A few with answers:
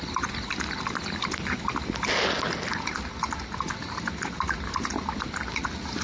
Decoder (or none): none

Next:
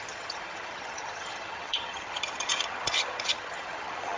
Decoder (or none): vocoder, HiFi-GAN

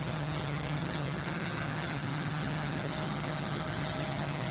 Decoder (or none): vocoder, HiFi-GAN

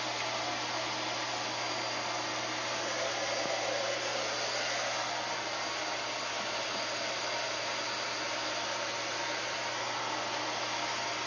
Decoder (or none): none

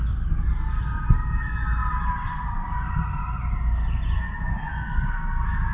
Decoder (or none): none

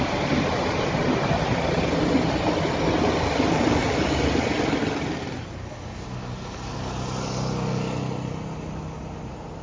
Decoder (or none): none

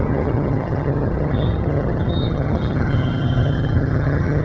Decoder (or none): vocoder, HiFi-GAN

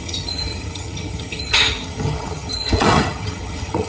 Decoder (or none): vocoder, HiFi-GAN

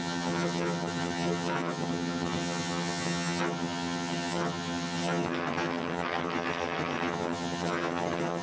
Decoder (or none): vocoder, HiFi-GAN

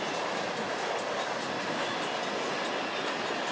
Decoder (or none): none